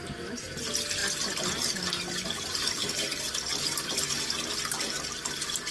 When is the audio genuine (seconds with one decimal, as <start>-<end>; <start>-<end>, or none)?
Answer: 0.0-5.7

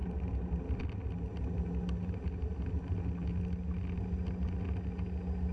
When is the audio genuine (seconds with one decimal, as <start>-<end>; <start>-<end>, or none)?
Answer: 0.0-5.5

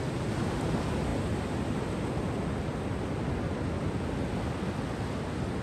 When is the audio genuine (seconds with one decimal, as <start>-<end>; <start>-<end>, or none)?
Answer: 0.0-5.6

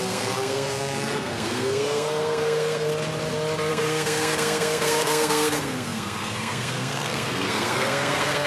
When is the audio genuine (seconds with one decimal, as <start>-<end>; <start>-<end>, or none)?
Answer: 2.9-3.7